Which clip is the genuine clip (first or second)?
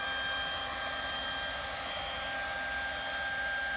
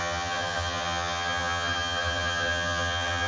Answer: first